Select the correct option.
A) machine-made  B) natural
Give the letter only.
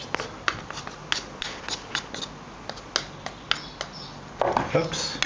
B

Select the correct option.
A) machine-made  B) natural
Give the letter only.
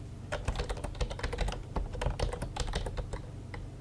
B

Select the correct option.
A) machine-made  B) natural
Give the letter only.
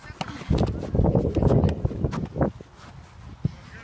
B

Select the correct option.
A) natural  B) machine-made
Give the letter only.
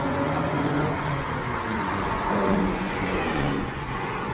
B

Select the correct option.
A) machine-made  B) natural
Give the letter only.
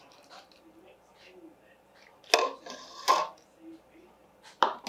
B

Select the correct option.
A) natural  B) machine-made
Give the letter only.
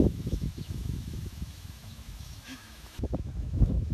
B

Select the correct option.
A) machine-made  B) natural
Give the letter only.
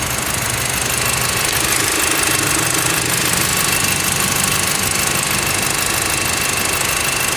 B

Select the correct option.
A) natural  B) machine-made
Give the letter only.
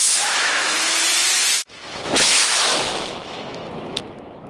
B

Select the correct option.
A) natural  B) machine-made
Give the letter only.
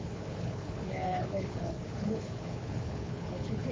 B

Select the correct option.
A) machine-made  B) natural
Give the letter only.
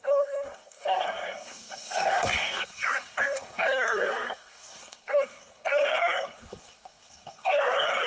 A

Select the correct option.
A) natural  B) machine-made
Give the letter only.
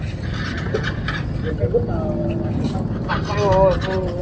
A